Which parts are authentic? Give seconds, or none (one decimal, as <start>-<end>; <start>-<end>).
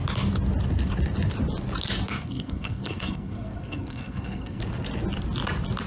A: 0.0-2.1; 4.6-5.9